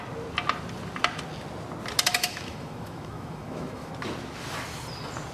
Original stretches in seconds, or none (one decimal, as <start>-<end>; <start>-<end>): 0.0-2.1; 3.9-5.3